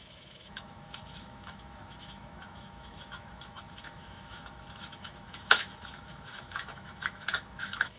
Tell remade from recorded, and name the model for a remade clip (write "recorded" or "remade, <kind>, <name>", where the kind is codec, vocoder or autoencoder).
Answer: remade, autoencoder, DAC-VAE